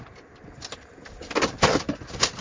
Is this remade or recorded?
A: recorded